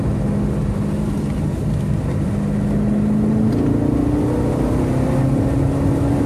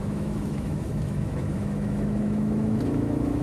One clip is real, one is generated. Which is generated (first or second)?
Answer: second